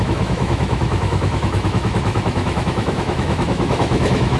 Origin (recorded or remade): remade